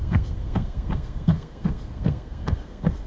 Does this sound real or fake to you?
fake